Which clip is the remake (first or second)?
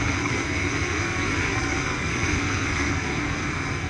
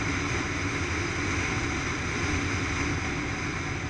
first